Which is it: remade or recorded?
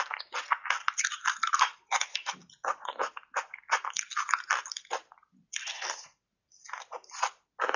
recorded